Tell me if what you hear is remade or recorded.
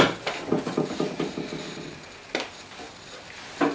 recorded